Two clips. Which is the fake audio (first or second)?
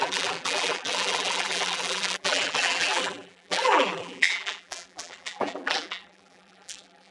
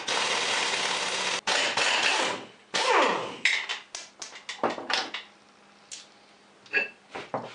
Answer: first